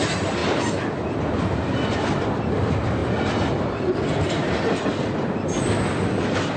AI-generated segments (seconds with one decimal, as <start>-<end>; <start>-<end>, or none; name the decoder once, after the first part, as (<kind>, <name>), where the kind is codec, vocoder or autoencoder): none